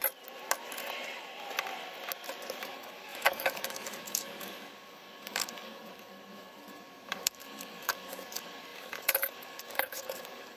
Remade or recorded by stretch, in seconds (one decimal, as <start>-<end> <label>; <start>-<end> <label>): 0.0-2.6 recorded; 2.6-10.6 remade